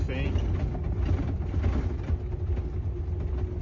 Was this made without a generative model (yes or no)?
yes